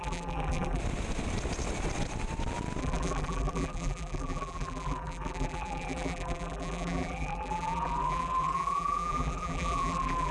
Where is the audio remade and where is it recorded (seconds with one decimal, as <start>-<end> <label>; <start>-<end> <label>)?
0.0-0.8 remade; 0.8-2.8 recorded; 2.8-10.3 remade